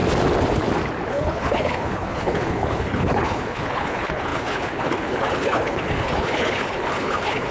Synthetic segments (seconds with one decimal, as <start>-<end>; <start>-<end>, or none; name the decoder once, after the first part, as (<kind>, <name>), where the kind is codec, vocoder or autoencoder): 1.1-7.5 (codec, HILCodec)